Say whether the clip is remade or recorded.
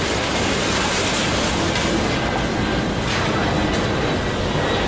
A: recorded